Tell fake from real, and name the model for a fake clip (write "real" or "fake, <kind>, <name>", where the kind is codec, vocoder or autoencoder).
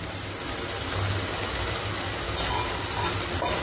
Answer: real